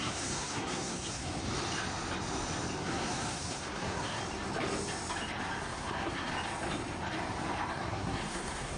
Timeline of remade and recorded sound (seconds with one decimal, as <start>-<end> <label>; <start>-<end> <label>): 0.0-1.4 remade; 1.4-2.8 recorded; 2.8-4.2 remade; 4.2-5.6 recorded; 5.6-6.3 remade; 6.3-7.7 recorded; 7.7-8.8 remade